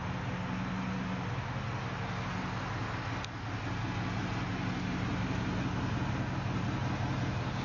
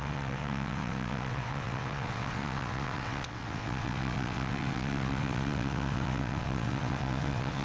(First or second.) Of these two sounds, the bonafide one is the first